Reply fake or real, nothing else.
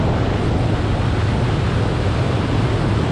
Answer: real